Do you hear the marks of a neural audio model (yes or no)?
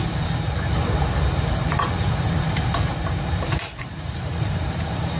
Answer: yes